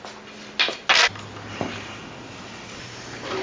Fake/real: real